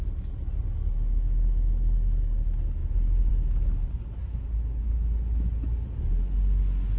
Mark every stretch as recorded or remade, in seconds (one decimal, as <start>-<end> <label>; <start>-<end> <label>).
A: 0.0-7.0 recorded